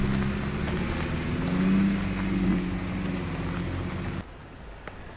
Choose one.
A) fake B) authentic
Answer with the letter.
B